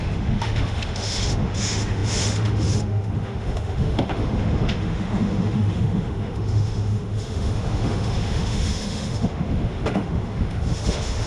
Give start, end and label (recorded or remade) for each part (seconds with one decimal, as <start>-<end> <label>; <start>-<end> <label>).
0.0-11.3 remade